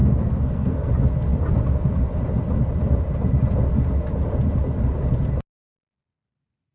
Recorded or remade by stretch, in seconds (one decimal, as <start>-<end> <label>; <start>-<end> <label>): 0.0-0.9 remade; 0.9-6.7 recorded